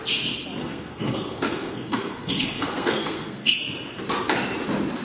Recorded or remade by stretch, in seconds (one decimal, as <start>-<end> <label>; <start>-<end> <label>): 0.0-0.6 recorded; 0.6-3.6 remade; 3.6-5.0 recorded